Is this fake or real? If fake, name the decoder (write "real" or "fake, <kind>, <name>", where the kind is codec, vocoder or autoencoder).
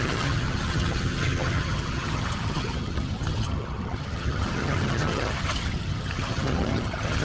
fake, vocoder, HiFi-GAN